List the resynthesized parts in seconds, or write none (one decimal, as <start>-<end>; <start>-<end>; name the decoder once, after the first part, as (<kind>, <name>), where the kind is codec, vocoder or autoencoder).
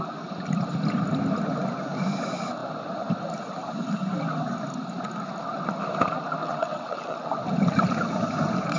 6.4-7.3 (vocoder, WaveNeXt)